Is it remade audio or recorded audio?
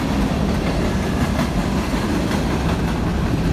recorded